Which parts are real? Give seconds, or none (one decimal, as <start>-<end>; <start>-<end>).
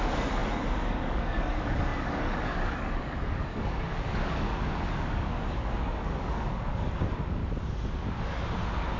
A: 7.4-9.0